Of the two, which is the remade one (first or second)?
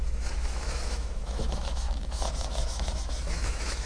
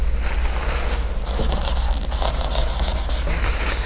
first